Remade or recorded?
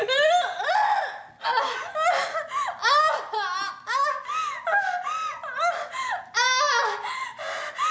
recorded